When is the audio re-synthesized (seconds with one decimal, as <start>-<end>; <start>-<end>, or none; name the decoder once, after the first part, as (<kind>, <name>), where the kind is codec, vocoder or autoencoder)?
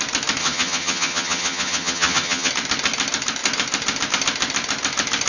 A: 0.4-2.5 (vocoder, HiFi-GAN)